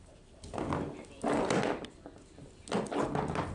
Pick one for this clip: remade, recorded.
recorded